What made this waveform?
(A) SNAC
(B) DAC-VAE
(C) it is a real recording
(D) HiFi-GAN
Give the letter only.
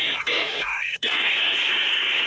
A